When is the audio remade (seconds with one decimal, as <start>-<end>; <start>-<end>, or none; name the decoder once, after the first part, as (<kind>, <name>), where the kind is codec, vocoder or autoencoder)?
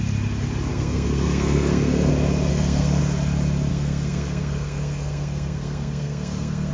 0.7-2.1 (codec, SNAC); 2.5-3.0; 3.7-6.7